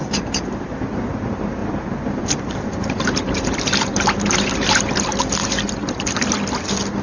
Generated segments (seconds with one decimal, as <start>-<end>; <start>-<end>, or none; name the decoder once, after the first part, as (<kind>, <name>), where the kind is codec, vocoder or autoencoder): 1.6-4.8 (vocoder, BigVGAN v2)